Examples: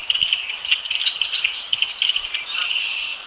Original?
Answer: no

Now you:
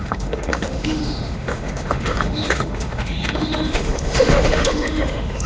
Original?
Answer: no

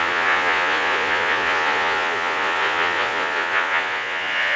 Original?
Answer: no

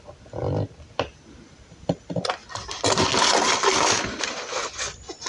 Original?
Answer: yes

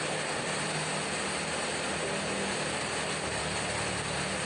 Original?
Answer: yes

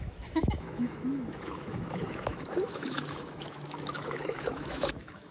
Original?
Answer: no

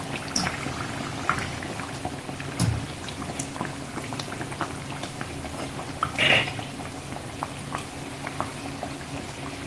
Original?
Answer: yes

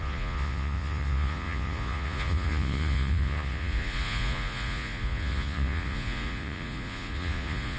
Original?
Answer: no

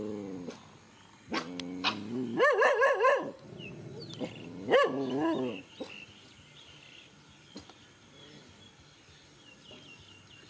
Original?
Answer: yes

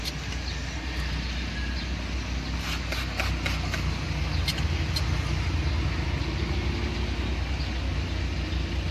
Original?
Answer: yes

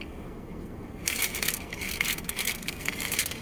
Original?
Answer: no